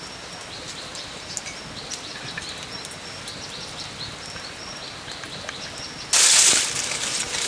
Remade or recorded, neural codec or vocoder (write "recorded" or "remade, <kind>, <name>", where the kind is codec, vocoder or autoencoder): recorded